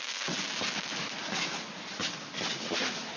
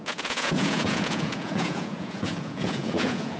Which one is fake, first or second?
second